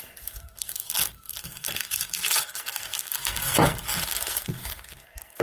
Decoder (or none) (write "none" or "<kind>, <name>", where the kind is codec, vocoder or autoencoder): codec, SNAC